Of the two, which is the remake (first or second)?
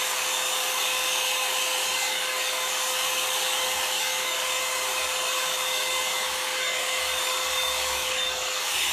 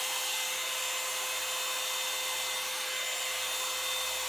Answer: first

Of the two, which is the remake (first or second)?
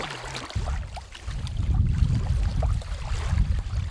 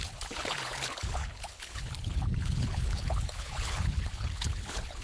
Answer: second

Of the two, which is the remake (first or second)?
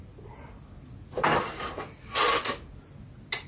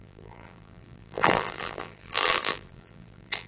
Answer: second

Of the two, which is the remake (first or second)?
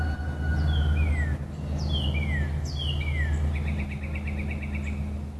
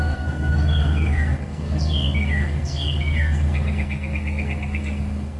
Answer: second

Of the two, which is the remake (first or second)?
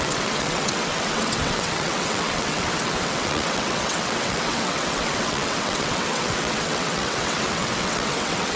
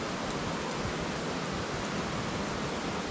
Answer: first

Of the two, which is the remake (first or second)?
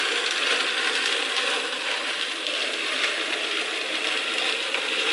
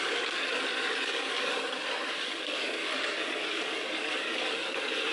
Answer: second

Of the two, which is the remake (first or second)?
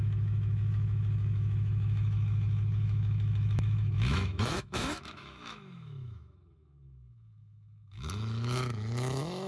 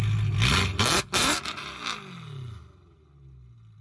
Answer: first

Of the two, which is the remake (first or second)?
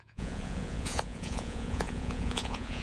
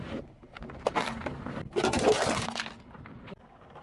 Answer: first